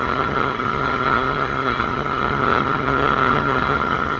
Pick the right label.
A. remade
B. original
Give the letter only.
A